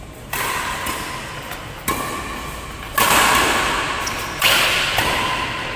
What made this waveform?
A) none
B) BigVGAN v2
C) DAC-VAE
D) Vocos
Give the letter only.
A